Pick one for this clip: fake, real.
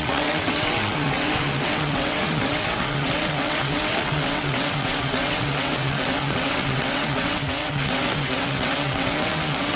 fake